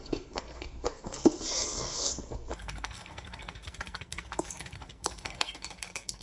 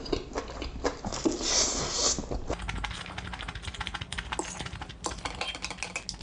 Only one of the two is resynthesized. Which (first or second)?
first